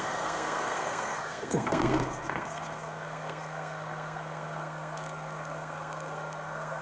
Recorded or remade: remade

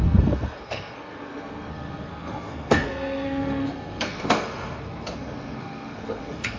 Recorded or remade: remade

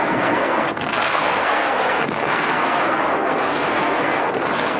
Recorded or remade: remade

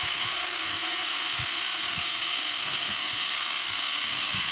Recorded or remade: remade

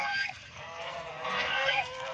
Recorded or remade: remade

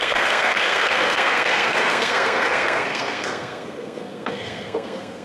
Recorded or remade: remade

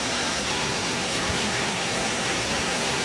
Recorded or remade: remade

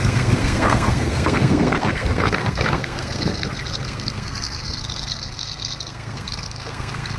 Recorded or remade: remade